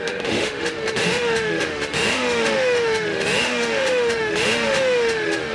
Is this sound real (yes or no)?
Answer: no